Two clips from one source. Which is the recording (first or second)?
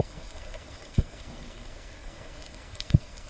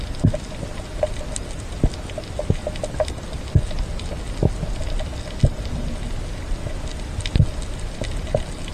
second